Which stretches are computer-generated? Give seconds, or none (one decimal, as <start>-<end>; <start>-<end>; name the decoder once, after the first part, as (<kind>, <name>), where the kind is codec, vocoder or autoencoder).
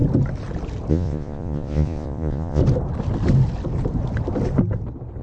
0.9-2.6 (vocoder, Vocos)